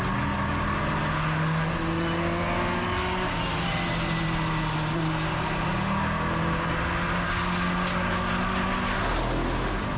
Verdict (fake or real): real